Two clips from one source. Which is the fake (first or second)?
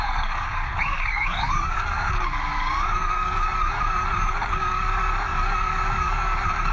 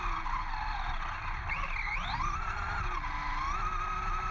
first